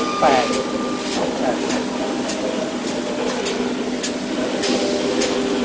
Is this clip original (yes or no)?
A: yes